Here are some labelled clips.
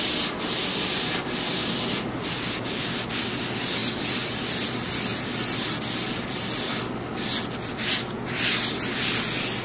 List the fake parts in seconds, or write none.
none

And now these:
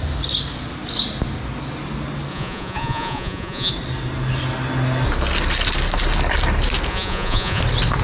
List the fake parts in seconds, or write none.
2.3-3.7 (vocoder, Vocos); 6.9-7.6